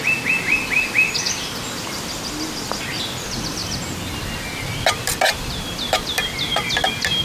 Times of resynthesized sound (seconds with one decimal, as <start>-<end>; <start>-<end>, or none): none